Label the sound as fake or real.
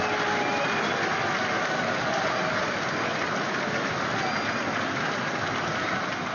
real